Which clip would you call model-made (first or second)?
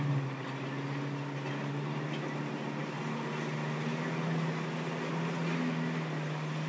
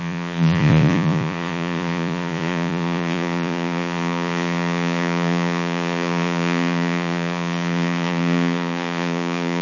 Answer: second